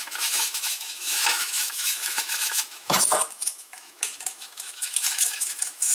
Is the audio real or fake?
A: fake